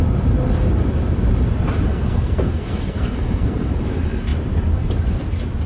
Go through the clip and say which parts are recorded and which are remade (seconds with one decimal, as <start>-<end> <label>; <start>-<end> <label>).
0.0-1.9 recorded; 1.9-3.7 remade; 3.7-5.7 recorded